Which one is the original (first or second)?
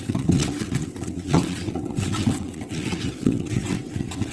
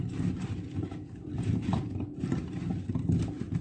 second